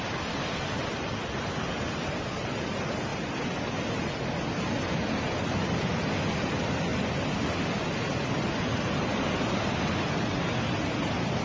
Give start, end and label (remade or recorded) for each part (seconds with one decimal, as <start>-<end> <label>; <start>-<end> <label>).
0.0-11.4 recorded